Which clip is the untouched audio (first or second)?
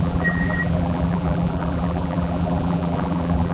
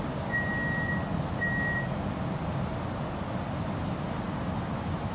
second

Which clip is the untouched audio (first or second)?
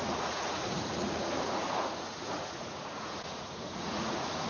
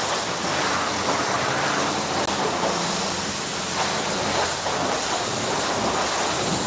second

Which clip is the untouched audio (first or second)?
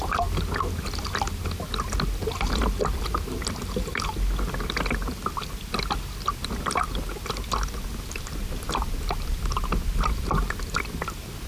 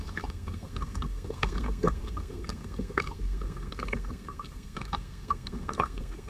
first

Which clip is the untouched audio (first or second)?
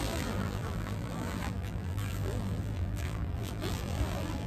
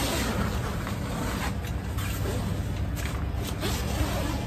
second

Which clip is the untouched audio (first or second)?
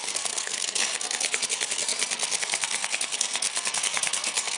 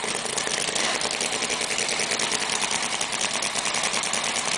second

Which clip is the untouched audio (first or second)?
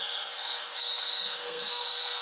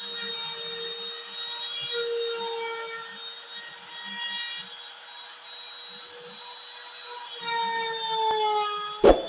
second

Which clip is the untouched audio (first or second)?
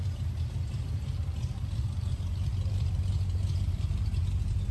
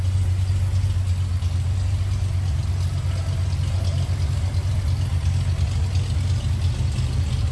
second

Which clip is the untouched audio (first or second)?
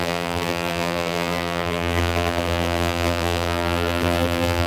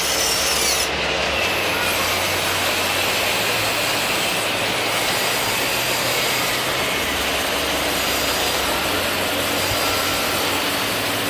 second